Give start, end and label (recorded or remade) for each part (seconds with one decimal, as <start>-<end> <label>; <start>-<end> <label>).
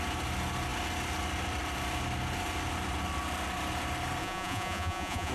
0.0-4.2 recorded; 4.2-5.3 remade